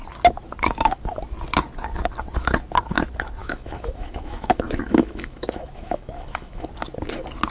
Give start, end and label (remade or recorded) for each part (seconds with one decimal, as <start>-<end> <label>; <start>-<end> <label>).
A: 0.0-3.4 recorded; 3.4-6.7 remade; 6.7-7.5 recorded